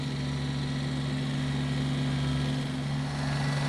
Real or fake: real